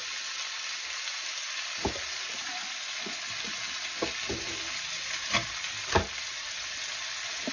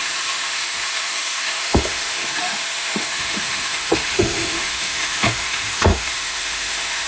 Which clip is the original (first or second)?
first